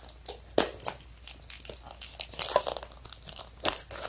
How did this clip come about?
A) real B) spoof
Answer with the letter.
A